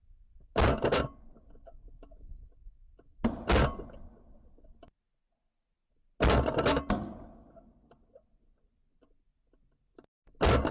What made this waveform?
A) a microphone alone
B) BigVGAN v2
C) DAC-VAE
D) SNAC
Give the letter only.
A